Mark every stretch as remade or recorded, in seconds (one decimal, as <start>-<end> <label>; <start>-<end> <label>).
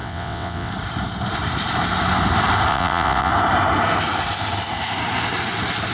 0.0-0.7 remade; 0.7-2.7 recorded; 2.7-3.3 remade; 3.3-5.9 recorded